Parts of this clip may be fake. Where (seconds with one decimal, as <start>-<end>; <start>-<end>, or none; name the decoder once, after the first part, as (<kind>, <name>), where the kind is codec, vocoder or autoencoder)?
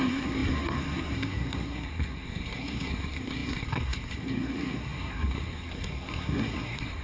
0.0-7.0 (codec, SNAC)